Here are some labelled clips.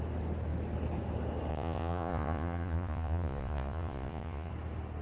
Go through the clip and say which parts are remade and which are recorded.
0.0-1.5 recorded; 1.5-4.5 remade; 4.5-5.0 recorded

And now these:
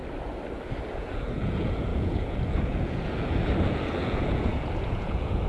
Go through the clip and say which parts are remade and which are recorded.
0.0-0.9 recorded; 0.9-5.5 remade

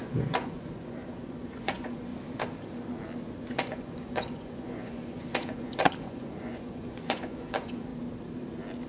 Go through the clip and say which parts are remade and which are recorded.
0.0-2.1 remade; 2.1-3.5 recorded; 3.5-7.9 remade; 7.9-8.9 recorded

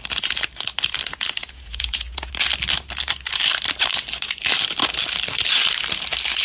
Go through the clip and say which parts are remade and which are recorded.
0.0-1.4 recorded; 1.4-2.3 remade; 2.3-6.4 recorded